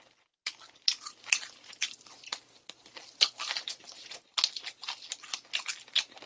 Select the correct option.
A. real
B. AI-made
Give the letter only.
A